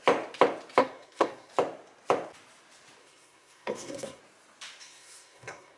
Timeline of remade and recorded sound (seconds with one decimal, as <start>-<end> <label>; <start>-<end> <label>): 0.0-0.8 recorded; 0.8-1.5 remade; 1.5-3.0 recorded; 3.0-4.2 remade; 4.2-4.8 recorded; 4.8-5.8 remade